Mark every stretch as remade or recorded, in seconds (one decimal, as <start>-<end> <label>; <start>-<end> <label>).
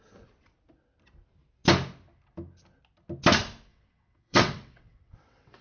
0.0-3.7 recorded; 3.7-5.6 remade